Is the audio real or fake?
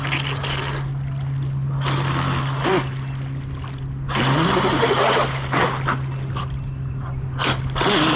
real